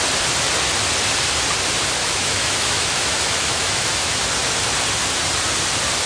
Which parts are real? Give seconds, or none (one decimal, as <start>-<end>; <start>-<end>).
0.0-2.0; 4.2-6.1